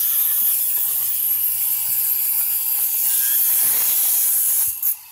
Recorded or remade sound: recorded